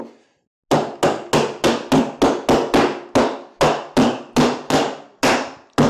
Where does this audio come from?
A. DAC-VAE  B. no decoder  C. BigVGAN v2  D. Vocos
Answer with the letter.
B